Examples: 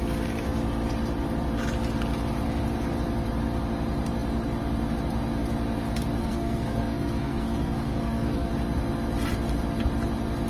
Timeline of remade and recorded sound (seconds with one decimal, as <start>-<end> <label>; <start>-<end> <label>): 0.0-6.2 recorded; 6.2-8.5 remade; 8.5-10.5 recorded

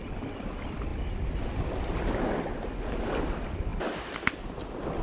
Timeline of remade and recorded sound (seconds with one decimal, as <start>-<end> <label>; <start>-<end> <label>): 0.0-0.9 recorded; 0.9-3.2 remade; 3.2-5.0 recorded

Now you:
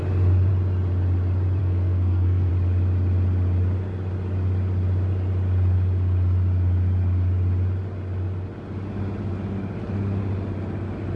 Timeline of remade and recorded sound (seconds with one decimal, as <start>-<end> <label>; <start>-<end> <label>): 0.0-1.6 recorded; 1.6-2.5 remade; 2.5-11.2 recorded

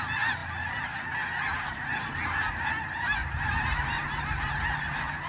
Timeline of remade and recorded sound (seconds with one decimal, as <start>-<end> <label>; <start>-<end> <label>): 0.0-3.2 recorded; 3.2-4.5 remade; 4.5-5.3 recorded

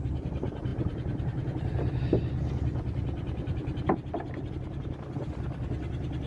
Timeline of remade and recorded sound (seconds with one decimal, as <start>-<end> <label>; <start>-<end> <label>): 0.0-6.3 recorded

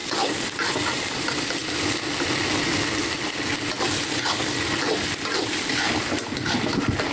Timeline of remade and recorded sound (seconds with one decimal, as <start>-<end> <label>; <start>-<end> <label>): 0.0-7.1 recorded

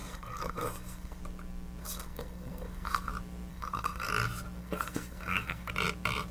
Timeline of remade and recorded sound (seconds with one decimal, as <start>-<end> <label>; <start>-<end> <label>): 0.0-1.2 remade; 1.2-1.8 recorded; 1.8-3.1 remade; 3.1-3.5 recorded; 3.5-4.1 remade; 4.1-4.6 recorded; 4.6-5.7 remade; 5.7-6.3 recorded